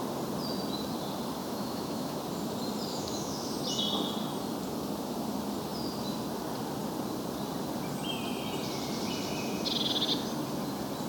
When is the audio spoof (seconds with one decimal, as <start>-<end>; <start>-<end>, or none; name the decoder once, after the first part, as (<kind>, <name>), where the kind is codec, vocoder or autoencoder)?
1.4-2.2 (autoencoder, DAC-VAE); 2.9-3.5